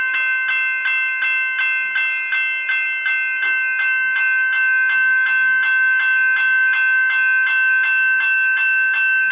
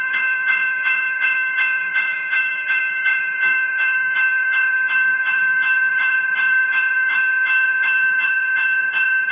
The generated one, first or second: second